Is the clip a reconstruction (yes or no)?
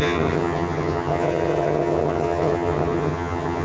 yes